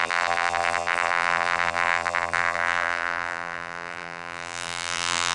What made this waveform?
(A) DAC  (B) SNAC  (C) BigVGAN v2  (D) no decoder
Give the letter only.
C